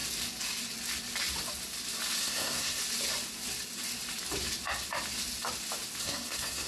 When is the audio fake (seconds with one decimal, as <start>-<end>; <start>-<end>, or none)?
2.2-2.8; 6.0-6.7